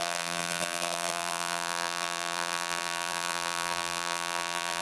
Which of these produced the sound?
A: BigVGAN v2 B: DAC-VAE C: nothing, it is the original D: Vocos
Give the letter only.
A